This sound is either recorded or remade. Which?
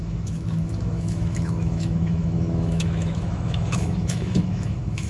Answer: remade